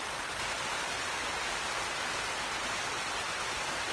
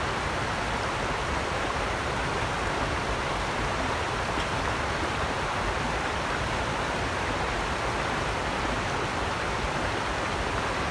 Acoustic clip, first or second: first